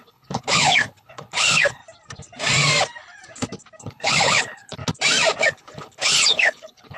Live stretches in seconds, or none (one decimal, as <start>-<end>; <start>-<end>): 1.8-3.8; 4.8-5.5